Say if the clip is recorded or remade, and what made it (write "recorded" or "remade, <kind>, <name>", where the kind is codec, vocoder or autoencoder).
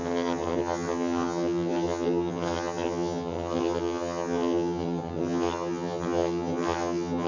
remade, vocoder, HiFi-GAN